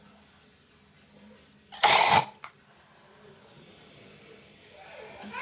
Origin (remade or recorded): recorded